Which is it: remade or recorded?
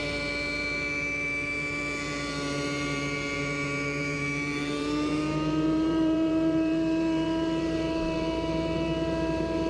remade